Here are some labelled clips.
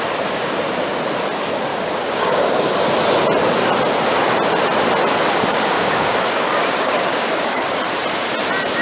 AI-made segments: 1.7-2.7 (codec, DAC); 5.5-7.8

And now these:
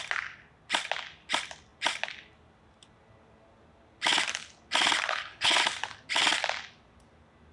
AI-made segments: 5.1-5.6 (codec, HILCodec)

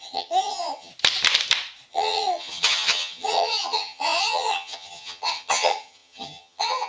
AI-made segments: 0.0-0.9 (vocoder, HiFi-GAN); 1.9-6.9

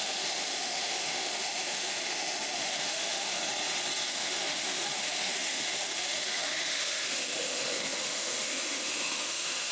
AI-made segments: 0.0-3.4 (autoencoder, DAC-VAE); 4.1-9.7

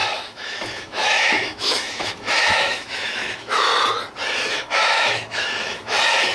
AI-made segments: 0.0-3.7 (autoencoder, DAC-VAE); 4.5-6.3

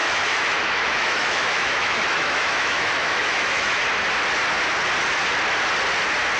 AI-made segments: 0.0-3.8 (autoencoder, DAC-VAE)

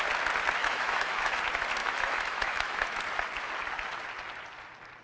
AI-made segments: 0.6-1.4 (autoencoder, DAC-VAE); 1.8-3.0

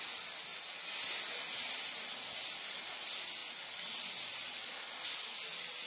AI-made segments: none